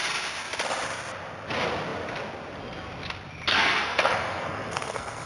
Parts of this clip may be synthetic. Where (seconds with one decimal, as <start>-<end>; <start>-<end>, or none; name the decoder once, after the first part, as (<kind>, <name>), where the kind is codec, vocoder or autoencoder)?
3.5-5.3 (codec, SNAC)